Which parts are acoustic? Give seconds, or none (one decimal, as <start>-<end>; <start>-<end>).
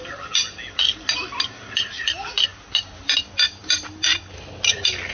0.0-5.1